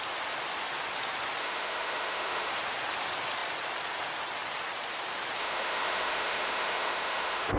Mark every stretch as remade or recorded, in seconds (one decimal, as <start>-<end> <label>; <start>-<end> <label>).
0.0-1.4 recorded; 1.4-2.5 remade; 2.5-5.4 recorded; 5.4-7.6 remade